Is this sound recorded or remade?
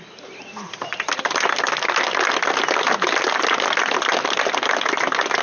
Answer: recorded